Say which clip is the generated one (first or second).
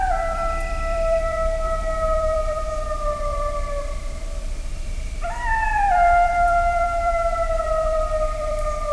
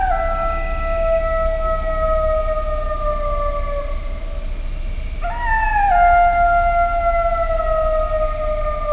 first